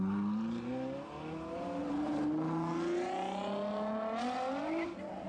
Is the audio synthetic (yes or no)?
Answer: no